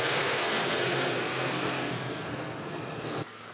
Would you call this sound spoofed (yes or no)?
yes